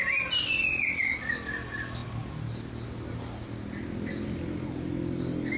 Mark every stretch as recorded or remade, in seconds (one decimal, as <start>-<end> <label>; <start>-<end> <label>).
0.0-5.6 recorded